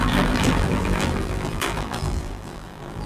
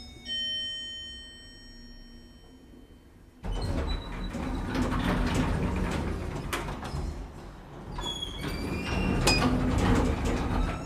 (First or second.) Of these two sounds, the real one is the second